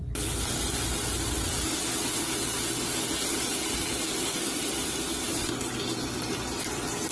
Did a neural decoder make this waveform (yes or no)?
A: no